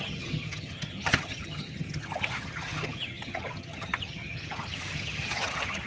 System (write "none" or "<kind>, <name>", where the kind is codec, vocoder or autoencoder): vocoder, HiFi-GAN